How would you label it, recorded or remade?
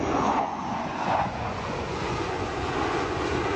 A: remade